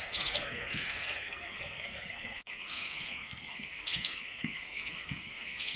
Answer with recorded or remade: remade